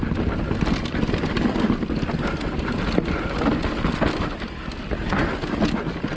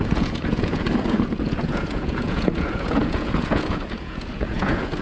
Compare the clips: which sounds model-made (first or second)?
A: second